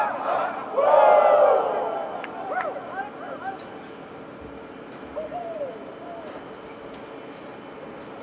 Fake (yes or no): no